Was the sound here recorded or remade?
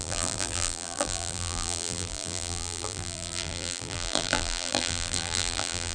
remade